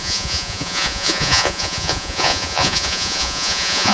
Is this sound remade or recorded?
remade